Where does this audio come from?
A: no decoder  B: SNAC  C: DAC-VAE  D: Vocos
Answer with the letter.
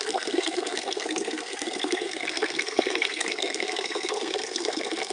B